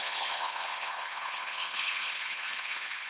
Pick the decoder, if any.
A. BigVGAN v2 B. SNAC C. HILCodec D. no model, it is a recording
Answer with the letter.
C